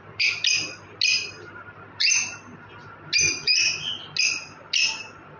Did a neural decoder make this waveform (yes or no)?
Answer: no